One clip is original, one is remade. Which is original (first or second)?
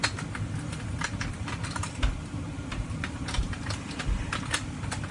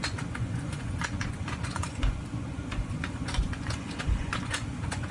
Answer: first